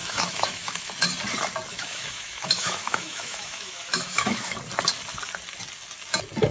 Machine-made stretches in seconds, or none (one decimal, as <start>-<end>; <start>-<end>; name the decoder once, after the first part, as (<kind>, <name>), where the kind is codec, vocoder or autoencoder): 0.0-0.9 (autoencoder, DAC-VAE); 1.7-4.6